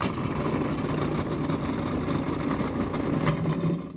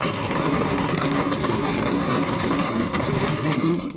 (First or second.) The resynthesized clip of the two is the second